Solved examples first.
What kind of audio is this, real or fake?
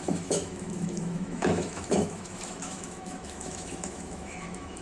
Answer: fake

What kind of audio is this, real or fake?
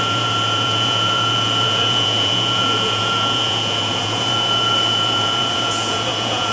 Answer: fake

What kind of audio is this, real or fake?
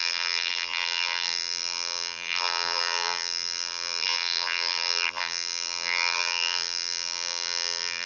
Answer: fake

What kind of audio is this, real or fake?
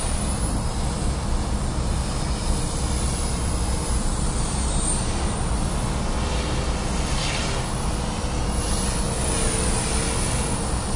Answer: real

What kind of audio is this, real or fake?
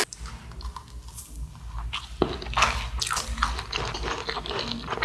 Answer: real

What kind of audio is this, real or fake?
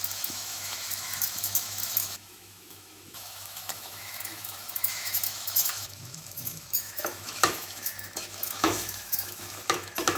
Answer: fake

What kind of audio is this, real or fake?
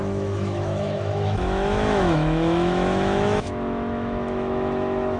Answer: fake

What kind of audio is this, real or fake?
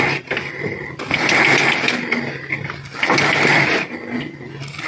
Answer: real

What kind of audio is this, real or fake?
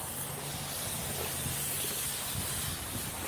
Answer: fake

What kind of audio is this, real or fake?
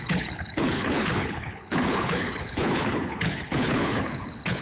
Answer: fake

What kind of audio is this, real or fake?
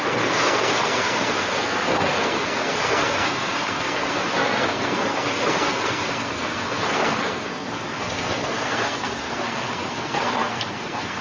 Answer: fake